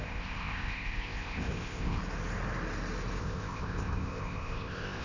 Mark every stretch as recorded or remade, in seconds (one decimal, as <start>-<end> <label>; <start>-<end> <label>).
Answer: 0.0-2.0 remade; 2.0-3.2 recorded; 3.2-5.0 remade

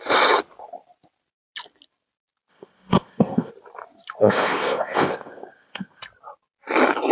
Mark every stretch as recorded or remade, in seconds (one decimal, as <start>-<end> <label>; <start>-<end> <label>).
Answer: 0.0-2.5 recorded; 2.5-3.5 remade; 3.5-4.2 recorded; 4.2-6.0 remade; 6.0-7.1 recorded

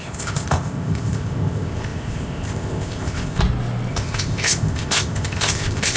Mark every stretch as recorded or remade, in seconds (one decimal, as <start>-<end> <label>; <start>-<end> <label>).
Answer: 0.0-3.4 remade; 3.4-3.9 recorded; 3.9-6.0 remade

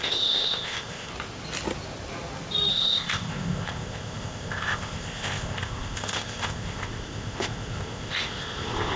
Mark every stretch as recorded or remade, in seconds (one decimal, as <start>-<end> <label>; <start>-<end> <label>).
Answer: 0.0-1.1 remade; 1.1-2.7 recorded; 2.7-9.0 remade